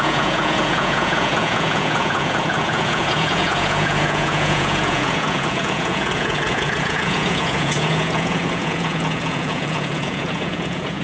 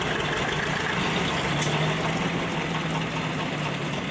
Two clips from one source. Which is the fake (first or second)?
first